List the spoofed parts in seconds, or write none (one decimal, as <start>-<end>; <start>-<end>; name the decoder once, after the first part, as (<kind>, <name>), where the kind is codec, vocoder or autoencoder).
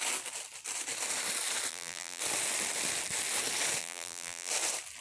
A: 1.7-2.2 (vocoder, BigVGAN v2); 3.8-4.5